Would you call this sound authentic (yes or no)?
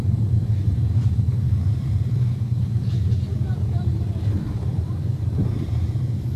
no